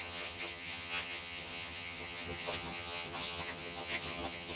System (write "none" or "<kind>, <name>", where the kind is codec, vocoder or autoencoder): vocoder, HiFi-GAN